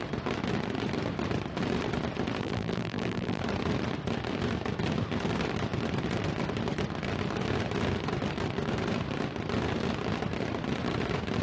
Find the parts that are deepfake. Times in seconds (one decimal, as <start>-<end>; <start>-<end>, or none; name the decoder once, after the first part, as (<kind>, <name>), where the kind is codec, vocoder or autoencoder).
2.4-3.4 (vocoder, BigVGAN v2)

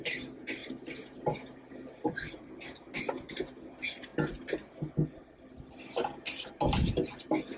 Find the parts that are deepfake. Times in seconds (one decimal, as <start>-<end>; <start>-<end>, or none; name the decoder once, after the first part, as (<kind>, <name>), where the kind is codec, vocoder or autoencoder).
0.0-7.6 (vocoder, BigVGAN v2)

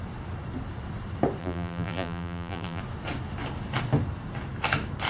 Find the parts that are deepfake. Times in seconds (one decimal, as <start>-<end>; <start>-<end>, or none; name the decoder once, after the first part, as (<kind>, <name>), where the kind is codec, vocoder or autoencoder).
1.4-2.8 (vocoder, BigVGAN v2)

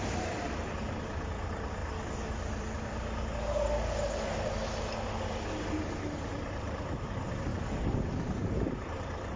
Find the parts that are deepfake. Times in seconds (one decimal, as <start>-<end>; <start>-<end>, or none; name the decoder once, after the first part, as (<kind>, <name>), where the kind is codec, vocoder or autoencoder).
0.0-1.8 (vocoder, BigVGAN v2); 5.4-7.5; 8.4-9.4

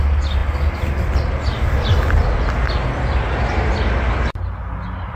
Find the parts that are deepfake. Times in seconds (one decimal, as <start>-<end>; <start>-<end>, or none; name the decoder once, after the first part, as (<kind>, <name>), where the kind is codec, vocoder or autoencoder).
none

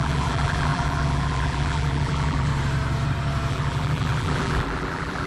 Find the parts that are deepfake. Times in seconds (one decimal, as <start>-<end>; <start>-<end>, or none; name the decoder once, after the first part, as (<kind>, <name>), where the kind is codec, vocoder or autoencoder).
0.0-2.5 (vocoder, BigVGAN v2); 3.5-5.3

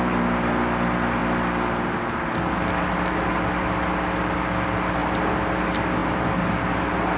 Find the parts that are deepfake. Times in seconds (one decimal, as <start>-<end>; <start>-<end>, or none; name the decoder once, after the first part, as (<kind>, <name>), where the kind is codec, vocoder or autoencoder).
none

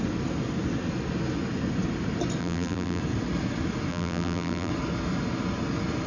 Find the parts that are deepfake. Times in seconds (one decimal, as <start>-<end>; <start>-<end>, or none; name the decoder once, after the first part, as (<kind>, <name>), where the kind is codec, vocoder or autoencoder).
2.4-3.0 (vocoder, BigVGAN v2); 3.9-4.7